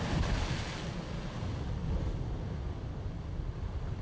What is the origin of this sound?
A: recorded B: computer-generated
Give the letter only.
A